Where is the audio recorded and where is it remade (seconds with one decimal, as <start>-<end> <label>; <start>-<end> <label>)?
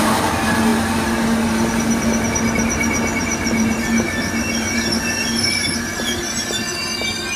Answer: 0.0-7.4 recorded